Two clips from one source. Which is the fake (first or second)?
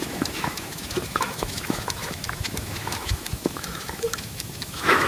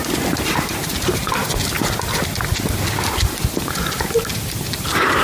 first